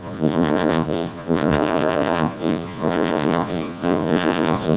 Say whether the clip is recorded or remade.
remade